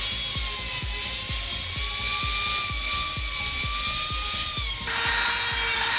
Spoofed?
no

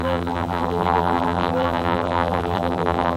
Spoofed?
yes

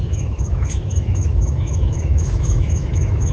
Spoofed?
yes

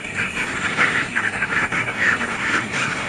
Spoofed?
yes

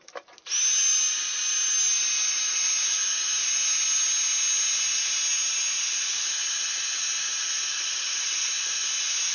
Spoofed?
no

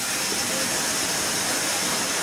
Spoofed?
no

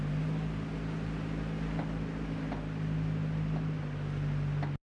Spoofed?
no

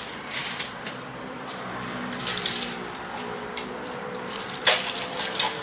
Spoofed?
yes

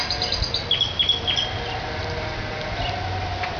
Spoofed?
no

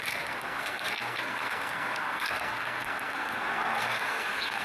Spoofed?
yes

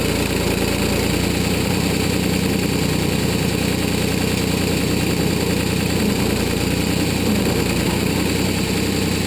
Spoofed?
no